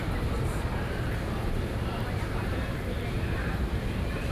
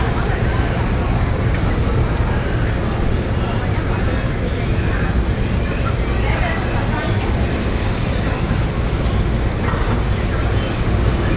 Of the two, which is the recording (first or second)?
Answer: second